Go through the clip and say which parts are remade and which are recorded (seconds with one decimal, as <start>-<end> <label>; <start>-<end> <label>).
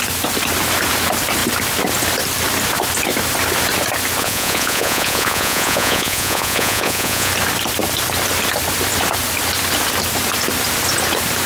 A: 0.0-4.2 recorded; 4.2-7.3 remade; 7.3-11.5 recorded